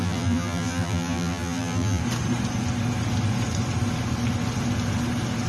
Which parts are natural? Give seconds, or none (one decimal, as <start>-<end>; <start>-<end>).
2.0-5.5

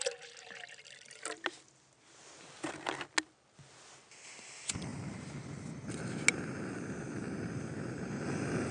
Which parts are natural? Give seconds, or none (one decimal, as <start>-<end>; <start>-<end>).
0.0-4.9; 5.6-8.7

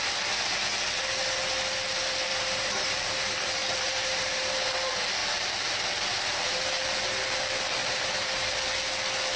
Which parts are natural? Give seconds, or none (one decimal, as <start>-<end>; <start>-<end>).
0.0-2.3; 4.7-7.8; 8.5-9.4

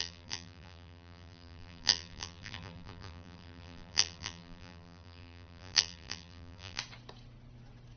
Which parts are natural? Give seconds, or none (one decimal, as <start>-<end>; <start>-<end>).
6.8-8.0

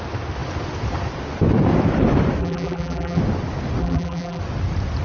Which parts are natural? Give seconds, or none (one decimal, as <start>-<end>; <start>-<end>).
0.0-2.4; 3.2-3.8; 4.4-5.0

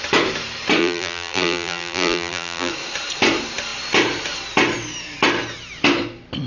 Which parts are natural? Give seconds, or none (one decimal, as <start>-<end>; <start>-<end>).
0.0-0.8; 2.7-6.5

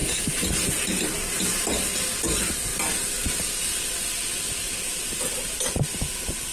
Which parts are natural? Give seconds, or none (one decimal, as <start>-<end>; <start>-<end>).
1.9-6.5

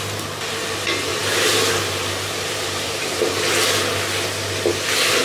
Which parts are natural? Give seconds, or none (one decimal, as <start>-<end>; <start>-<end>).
0.0-1.1; 3.3-5.2